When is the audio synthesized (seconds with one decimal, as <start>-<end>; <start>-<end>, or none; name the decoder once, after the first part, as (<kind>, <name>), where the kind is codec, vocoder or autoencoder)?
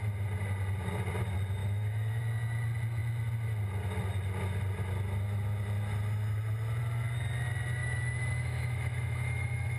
1.6-2.2 (autoencoder, DAC-VAE); 7.8-9.8